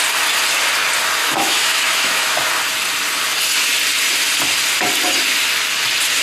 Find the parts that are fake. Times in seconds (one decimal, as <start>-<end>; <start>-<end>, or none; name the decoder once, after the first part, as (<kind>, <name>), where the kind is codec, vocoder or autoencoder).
1.2-2.5 (autoencoder, DAC-VAE)